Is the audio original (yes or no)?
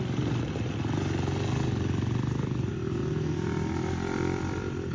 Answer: yes